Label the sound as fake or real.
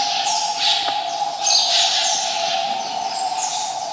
real